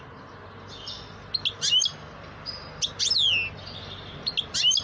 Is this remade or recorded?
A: recorded